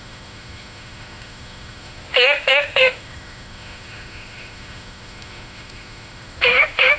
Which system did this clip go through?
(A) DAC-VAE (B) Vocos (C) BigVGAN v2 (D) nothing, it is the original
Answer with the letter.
A